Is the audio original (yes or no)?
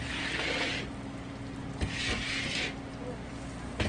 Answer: yes